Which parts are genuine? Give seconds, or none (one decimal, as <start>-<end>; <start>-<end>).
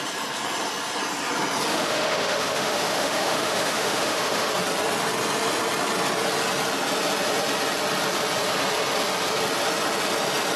0.0-1.7; 4.5-10.6